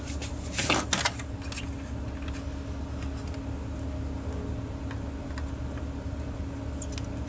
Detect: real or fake real